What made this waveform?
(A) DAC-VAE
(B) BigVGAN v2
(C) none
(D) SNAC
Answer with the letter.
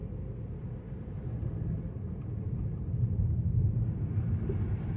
C